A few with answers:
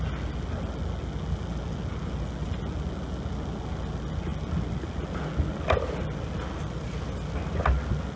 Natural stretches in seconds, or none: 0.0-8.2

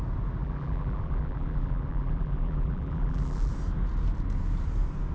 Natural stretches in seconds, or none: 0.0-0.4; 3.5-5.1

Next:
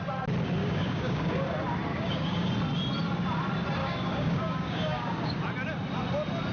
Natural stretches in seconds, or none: 0.0-0.6; 1.5-1.9; 2.5-3.8; 5.4-6.5

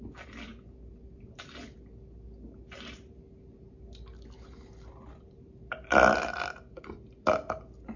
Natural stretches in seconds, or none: 0.0-8.0

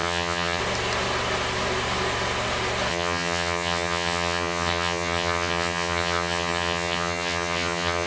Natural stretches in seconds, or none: 0.6-2.9

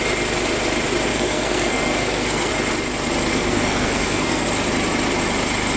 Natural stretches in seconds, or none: 0.0-1.1; 2.5-3.3; 4.5-5.8